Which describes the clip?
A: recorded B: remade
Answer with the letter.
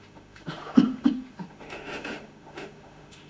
B